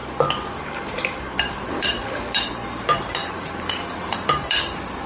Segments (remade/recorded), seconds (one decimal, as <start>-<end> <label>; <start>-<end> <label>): 0.0-1.2 recorded; 1.2-5.1 remade